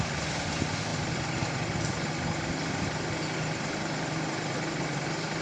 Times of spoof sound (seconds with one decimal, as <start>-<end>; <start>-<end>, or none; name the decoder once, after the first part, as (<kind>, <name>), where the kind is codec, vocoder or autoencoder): none